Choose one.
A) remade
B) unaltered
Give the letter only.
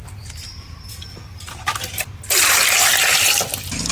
B